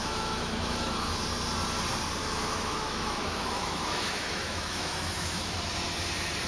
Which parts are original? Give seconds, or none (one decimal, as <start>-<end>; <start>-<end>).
1.1-2.2; 5.6-6.5